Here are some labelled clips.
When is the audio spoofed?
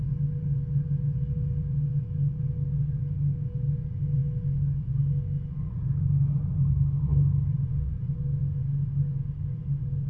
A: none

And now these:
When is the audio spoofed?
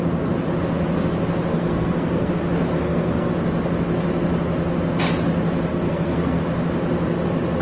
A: 1.5-2.3 (codec, SNAC); 2.7-3.3; 5.7-6.4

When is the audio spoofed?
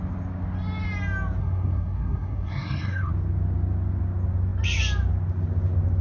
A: 1.4-3.1 (codec, SNAC)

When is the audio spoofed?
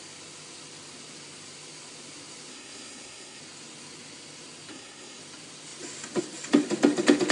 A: 2.5-3.4 (codec, SNAC); 4.7-5.2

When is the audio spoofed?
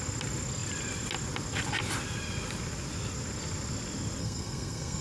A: 4.2-5.0 (codec, SNAC)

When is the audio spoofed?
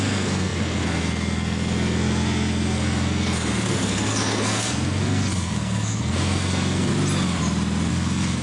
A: 0.0-6.9 (codec, SNAC); 7.9-8.4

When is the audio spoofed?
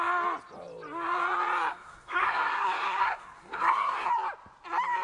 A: 1.7-4.1 (codec, SNAC)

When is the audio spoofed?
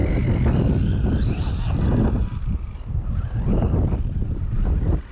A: none